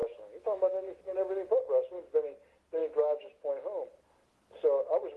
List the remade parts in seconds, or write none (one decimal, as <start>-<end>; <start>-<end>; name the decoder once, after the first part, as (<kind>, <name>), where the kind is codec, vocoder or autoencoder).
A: 0.0-1.0 (autoencoder, DAC-VAE); 2.8-3.5